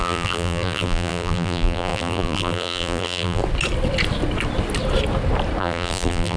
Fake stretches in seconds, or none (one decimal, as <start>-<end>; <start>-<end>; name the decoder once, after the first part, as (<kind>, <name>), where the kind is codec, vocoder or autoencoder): 0.0-3.4 (vocoder, BigVGAN v2); 5.6-6.4

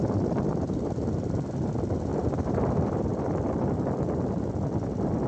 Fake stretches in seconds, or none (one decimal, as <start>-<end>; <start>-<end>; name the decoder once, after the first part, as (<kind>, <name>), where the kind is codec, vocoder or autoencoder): 0.5-1.5 (vocoder, BigVGAN v2); 2.1-3.7

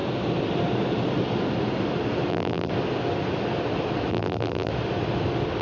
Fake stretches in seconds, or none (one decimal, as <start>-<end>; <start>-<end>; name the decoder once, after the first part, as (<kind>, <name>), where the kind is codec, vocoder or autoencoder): 2.3-2.7 (vocoder, BigVGAN v2); 4.1-4.7